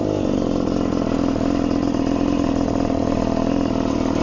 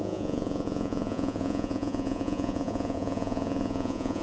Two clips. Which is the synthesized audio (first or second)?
second